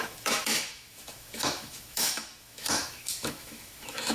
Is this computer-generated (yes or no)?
yes